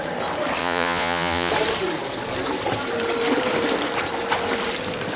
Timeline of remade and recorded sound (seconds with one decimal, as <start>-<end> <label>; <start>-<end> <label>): 0.0-0.6 recorded; 0.6-1.5 remade; 1.5-5.2 recorded